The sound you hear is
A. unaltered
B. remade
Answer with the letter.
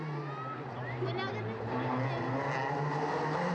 A